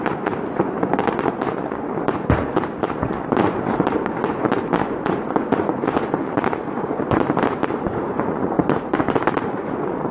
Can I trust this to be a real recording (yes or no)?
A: no